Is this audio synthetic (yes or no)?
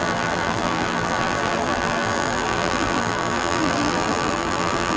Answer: yes